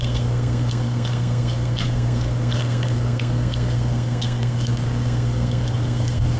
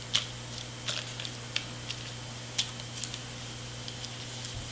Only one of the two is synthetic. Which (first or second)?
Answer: first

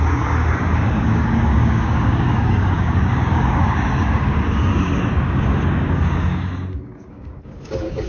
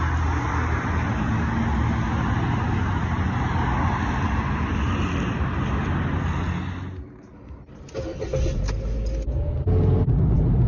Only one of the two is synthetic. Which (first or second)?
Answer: first